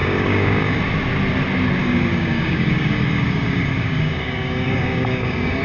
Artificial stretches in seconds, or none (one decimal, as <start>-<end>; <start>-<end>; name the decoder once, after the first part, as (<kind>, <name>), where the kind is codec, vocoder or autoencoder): 0.0-0.8 (codec, DAC); 1.8-5.6